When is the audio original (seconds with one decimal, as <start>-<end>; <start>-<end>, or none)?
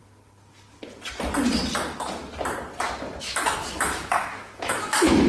0.0-3.2